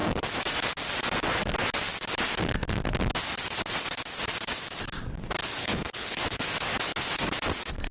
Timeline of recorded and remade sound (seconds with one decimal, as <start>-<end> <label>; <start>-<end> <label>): 0.0-5.6 recorded; 5.6-6.2 remade; 6.2-7.9 recorded